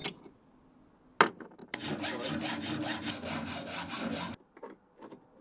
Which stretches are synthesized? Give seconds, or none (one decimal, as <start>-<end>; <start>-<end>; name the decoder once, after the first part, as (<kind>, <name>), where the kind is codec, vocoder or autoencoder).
none